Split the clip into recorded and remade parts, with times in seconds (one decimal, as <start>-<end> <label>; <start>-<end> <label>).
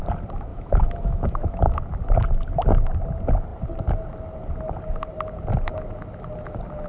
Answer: 0.0-0.5 recorded; 0.5-1.8 remade; 1.8-6.9 recorded